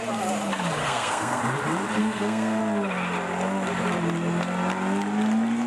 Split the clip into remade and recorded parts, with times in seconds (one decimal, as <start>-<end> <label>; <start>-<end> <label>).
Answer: 0.0-0.8 recorded; 0.8-1.4 remade; 1.4-2.0 recorded; 2.0-2.6 remade; 2.6-5.7 recorded